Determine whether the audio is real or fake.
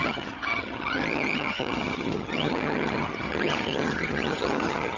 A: fake